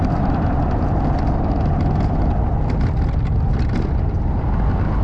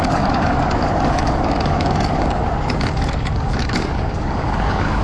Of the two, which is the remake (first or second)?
second